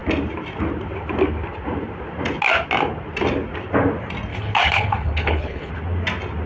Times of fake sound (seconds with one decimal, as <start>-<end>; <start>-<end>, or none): 4.3-5.7